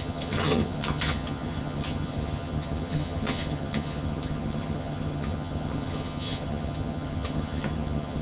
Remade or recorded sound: remade